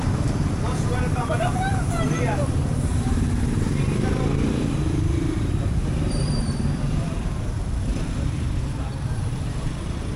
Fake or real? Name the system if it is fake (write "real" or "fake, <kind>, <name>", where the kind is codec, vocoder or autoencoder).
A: fake, vocoder, BigVGAN v2